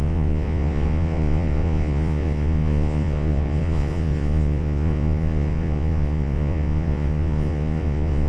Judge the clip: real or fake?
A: fake